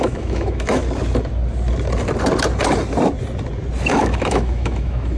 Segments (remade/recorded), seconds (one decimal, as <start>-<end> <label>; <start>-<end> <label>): 0.0-0.8 remade; 0.8-3.9 recorded; 3.9-5.2 remade